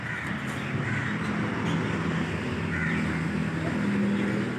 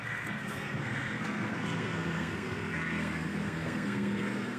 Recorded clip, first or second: first